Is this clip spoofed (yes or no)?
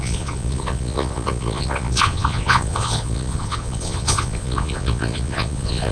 yes